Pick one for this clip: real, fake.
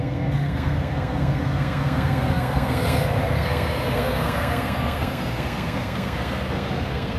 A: fake